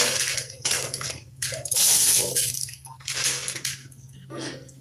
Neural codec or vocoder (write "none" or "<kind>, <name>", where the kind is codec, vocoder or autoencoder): codec, SNAC